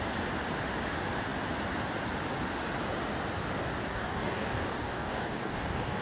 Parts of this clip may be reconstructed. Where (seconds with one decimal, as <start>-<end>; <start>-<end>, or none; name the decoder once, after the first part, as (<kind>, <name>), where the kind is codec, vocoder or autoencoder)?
3.9-6.0 (codec, DAC)